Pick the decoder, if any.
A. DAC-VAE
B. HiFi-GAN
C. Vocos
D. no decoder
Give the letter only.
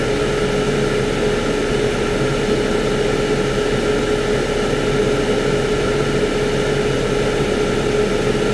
D